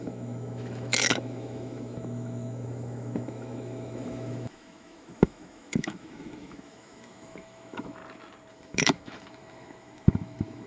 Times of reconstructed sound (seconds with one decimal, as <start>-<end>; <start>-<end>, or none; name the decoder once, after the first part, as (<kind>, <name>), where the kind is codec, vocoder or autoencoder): 0.0-8.0 (autoencoder, DAC-VAE); 8.5-10.7